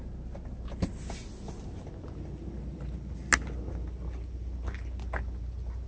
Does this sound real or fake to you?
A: real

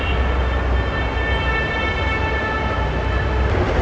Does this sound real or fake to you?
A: real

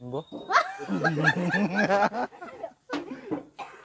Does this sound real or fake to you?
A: real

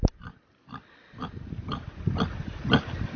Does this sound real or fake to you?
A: real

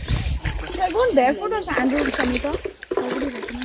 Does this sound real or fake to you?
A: real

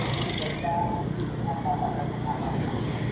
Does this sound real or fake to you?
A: real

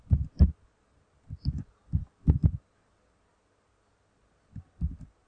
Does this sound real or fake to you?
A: real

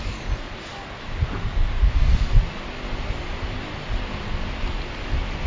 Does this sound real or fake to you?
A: real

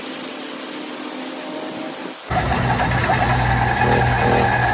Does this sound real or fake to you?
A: real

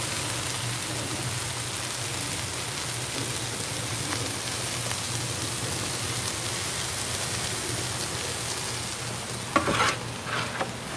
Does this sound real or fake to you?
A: real